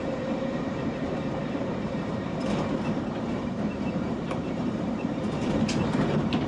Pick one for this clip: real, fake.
fake